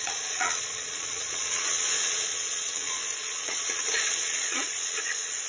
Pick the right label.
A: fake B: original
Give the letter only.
A